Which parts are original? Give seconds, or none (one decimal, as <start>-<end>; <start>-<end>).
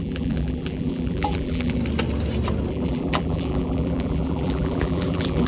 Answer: 1.8-2.7